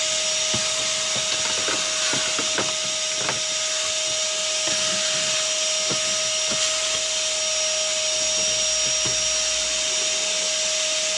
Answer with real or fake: real